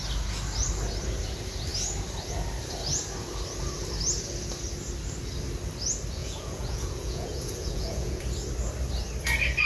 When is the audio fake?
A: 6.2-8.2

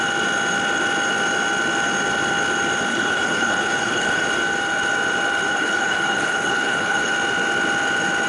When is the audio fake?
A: 2.9-4.2; 5.5-7.1

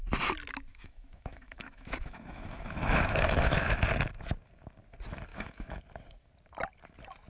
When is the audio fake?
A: 0.7-3.8; 5.3-5.8

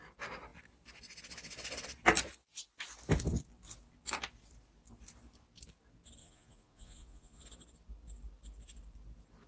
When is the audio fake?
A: 6.2-7.4

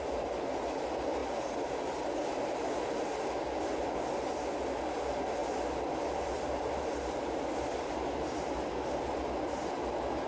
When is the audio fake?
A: 5.4-8.1

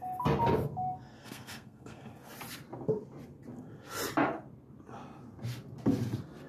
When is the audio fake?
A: 1.2-2.1